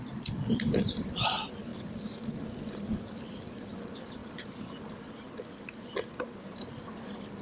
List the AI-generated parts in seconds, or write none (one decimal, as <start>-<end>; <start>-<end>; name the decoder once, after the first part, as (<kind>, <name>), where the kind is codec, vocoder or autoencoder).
0.0-1.7 (vocoder, BigVGAN v2); 2.8-4.2; 6.5-7.4